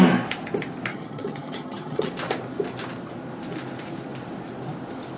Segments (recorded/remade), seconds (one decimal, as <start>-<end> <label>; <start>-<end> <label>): 0.0-0.9 recorded; 0.9-2.1 remade; 2.1-5.2 recorded